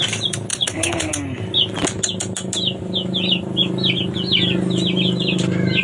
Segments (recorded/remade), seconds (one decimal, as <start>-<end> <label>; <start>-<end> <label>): 0.0-0.5 recorded; 0.5-1.1 remade; 1.1-5.8 recorded